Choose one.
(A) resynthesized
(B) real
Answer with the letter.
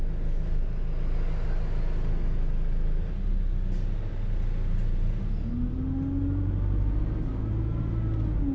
B